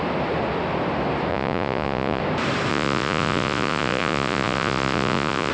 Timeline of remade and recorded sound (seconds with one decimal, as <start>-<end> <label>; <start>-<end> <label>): 0.0-1.3 recorded; 1.3-2.2 remade; 2.2-2.7 recorded; 2.7-5.5 remade